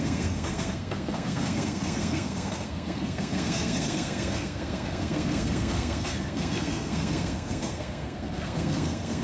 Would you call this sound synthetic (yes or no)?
yes